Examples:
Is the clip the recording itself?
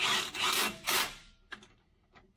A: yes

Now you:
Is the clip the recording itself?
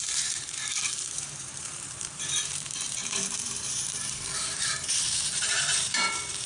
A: no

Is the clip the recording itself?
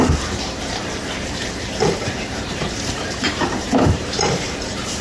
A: no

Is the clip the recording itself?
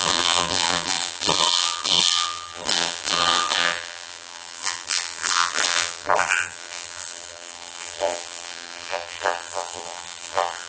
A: no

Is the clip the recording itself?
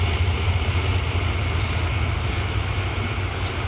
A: yes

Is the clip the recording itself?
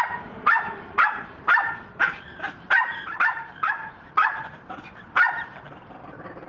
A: no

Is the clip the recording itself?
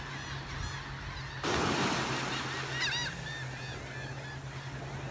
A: yes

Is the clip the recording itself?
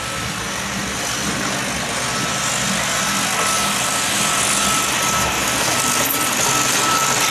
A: yes